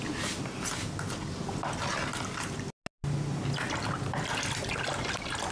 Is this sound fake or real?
real